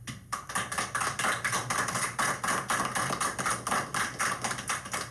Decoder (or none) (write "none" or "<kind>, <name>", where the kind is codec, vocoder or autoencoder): none